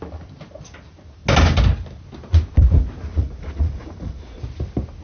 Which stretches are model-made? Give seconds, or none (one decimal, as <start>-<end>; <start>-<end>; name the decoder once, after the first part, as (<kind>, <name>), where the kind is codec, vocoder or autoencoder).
3.1-4.4 (vocoder, Vocos)